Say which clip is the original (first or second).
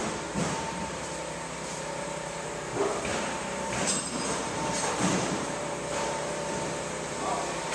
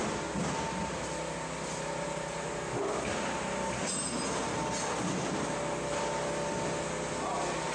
second